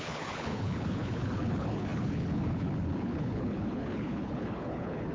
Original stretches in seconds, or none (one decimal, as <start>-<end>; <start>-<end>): none